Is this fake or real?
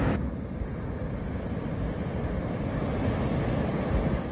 real